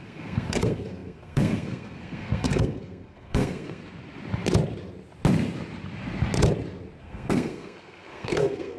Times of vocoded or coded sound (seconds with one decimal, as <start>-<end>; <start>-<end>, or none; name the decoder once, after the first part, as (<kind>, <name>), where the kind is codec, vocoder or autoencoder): 0.0-3.8 (codec, SNAC); 7.0-8.8